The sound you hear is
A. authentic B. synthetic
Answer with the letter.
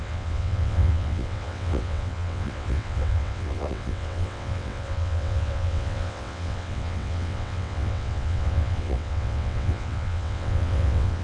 B